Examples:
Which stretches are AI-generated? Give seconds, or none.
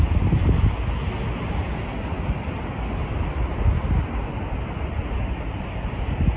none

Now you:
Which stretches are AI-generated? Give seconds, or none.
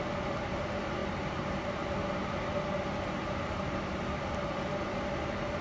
none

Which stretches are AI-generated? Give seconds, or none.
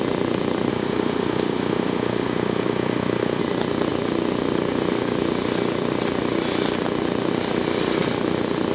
0.7-3.4 (autoencoder, DAC-VAE)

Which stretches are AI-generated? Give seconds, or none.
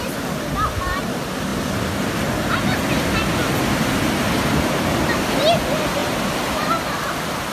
none